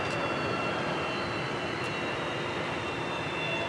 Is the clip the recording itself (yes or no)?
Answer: yes